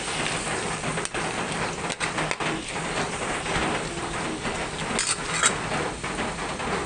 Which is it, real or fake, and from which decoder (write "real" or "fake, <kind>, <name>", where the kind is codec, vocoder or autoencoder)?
real